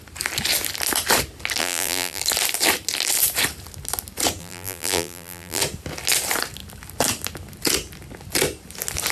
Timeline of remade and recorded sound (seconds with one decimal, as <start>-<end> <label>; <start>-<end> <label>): 0.0-1.6 recorded; 1.6-2.2 remade; 2.2-4.4 recorded; 4.4-5.6 remade; 5.6-9.1 recorded